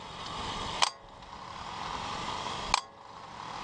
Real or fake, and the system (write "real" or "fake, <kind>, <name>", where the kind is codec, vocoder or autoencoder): real